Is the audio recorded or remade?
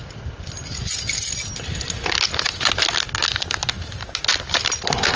recorded